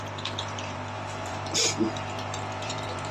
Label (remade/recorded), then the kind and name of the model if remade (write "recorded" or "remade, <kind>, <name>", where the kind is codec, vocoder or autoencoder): remade, vocoder, BigVGAN v2